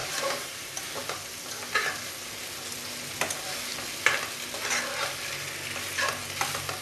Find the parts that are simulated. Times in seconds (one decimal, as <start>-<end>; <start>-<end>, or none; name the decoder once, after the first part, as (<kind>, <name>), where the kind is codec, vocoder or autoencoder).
0.0-0.8 (vocoder, BigVGAN v2)